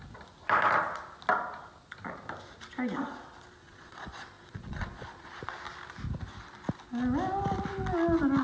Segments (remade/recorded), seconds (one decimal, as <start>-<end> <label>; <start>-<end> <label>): 0.0-3.6 recorded; 3.6-5.4 remade; 5.4-8.4 recorded